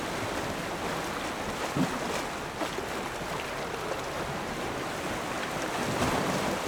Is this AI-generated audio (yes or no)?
no